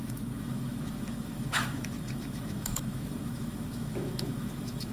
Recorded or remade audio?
remade